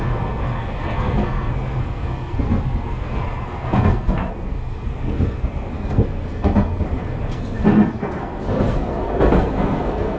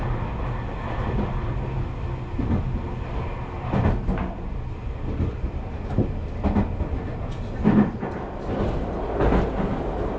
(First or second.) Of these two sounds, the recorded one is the second